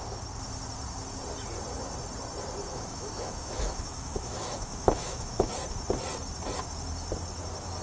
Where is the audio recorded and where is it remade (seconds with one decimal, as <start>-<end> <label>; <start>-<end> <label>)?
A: 0.0-2.7 recorded; 2.7-5.5 remade; 5.5-7.8 recorded